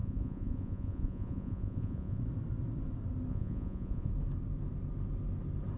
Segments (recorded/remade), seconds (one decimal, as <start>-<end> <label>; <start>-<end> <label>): 0.0-2.2 remade; 2.2-3.3 recorded; 3.3-4.1 remade; 4.1-5.8 recorded